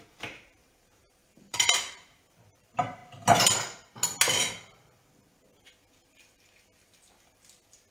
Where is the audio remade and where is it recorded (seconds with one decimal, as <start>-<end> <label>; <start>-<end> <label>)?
0.0-3.0 remade; 3.0-7.9 recorded